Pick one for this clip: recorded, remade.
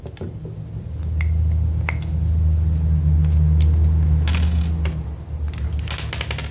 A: recorded